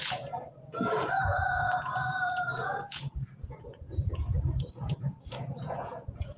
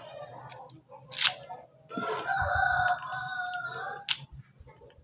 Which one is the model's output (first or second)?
first